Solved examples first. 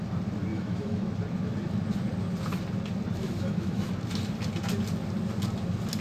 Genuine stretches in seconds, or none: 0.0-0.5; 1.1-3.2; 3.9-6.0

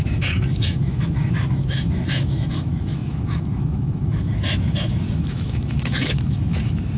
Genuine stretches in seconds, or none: none

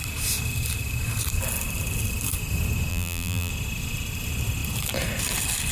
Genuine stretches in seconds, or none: 0.0-2.9; 3.5-5.7

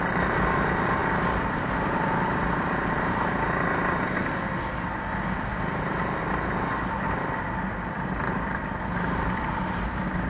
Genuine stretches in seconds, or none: 0.0-10.3

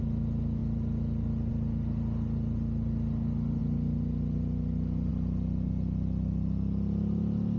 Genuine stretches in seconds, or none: 0.0-7.6

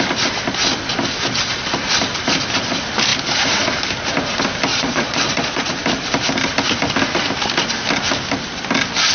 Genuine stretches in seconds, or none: 0.0-4.7; 5.7-9.1